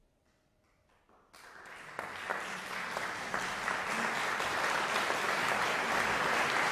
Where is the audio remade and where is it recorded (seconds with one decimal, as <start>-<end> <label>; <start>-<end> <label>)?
0.0-6.7 recorded